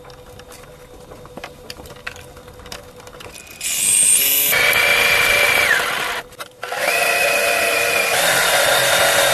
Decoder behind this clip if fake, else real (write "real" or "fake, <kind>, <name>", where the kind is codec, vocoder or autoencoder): real